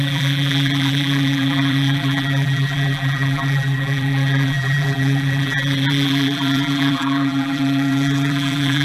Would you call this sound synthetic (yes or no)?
yes